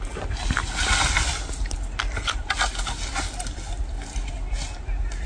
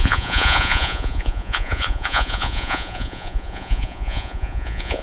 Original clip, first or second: first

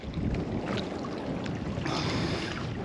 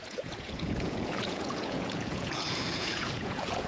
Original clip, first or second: first